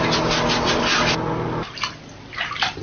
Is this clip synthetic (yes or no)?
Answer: no